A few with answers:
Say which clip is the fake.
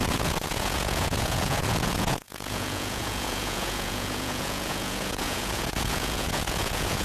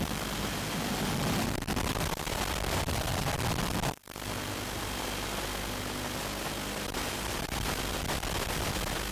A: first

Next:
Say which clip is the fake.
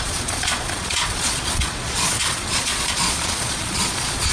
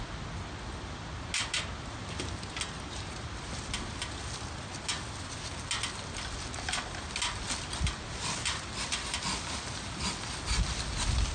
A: first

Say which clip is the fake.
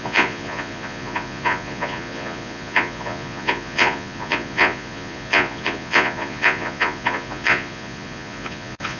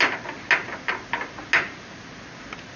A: first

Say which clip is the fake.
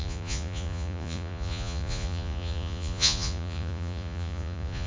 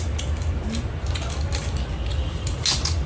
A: first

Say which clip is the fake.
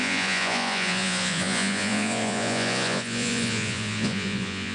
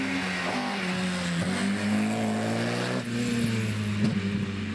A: first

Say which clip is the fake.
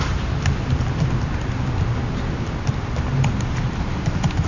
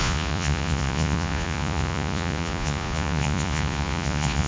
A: second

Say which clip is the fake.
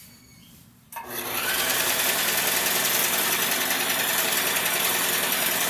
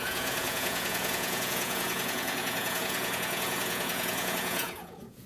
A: second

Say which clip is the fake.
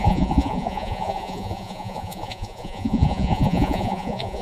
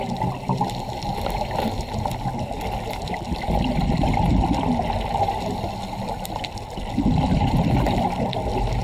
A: first